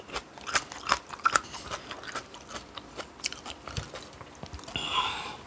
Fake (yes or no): no